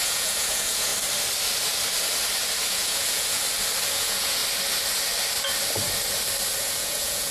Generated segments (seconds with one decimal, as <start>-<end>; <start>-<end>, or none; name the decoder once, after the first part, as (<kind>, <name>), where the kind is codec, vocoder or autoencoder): 0.0-0.9 (vocoder, Vocos); 2.7-3.4; 3.9-4.4; 6.6-7.3